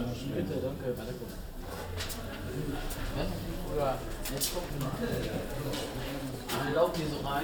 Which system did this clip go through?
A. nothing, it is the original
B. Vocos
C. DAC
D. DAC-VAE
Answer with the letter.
A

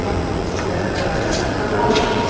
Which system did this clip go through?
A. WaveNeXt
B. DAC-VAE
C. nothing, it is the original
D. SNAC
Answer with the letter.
A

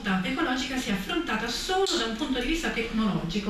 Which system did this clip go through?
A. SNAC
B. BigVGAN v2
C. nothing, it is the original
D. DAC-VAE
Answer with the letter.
C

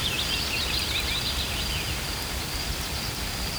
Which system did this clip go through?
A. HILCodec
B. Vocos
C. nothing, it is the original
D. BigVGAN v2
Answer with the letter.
D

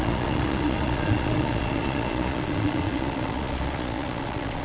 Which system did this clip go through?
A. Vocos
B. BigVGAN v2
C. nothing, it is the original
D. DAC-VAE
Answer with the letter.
A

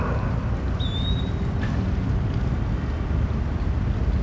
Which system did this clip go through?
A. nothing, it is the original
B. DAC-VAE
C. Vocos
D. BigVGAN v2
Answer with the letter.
A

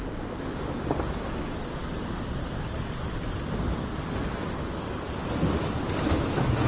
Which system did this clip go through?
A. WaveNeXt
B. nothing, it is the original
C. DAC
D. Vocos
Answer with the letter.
B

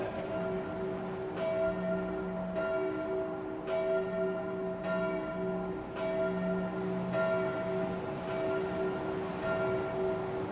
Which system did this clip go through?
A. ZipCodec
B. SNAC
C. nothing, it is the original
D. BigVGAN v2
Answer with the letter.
C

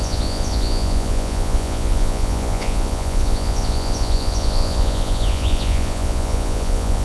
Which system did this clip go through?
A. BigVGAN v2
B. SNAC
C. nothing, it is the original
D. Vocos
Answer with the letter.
D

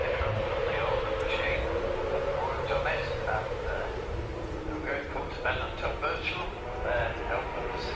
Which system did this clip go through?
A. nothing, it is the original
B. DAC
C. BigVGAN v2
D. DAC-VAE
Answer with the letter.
C